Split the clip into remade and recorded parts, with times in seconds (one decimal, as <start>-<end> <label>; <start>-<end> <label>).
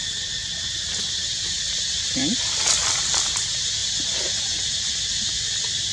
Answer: 0.0-5.9 recorded